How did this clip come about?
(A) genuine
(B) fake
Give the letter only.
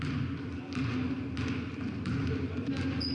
A